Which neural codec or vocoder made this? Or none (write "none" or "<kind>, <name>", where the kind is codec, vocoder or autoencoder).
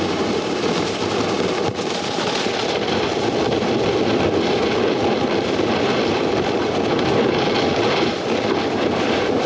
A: vocoder, BigVGAN v2